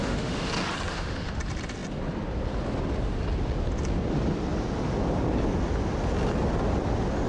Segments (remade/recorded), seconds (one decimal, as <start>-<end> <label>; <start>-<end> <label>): 0.0-0.5 remade; 0.5-0.9 recorded; 0.9-1.4 remade; 1.4-7.3 recorded